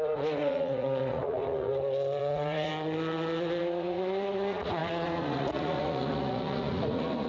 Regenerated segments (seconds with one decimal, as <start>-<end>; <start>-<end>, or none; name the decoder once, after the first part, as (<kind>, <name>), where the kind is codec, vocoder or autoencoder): 0.0-1.7 (vocoder, Vocos); 2.2-2.7; 3.6-7.3